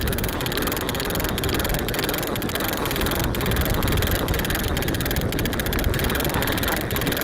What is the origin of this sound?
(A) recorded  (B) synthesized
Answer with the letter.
B